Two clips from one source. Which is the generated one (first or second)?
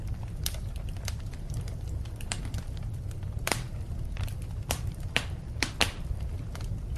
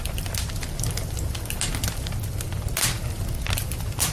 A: first